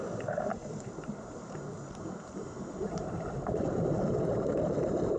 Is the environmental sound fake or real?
fake